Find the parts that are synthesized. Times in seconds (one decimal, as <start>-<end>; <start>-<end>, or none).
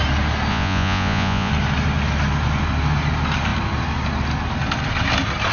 0.5-1.5